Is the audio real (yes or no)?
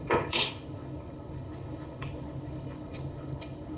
no